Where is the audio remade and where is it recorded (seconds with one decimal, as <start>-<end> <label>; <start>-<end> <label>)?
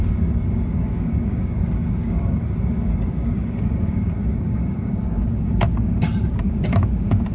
0.0-7.3 remade